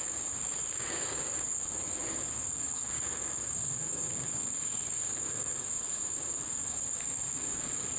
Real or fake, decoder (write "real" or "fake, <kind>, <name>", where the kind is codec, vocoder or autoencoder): fake, codec, DAC